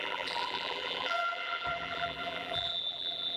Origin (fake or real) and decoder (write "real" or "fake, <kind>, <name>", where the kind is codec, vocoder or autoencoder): fake, vocoder, BigVGAN v2